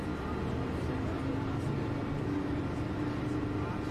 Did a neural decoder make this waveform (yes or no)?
no